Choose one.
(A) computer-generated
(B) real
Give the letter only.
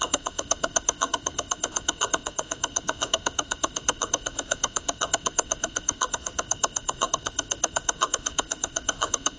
A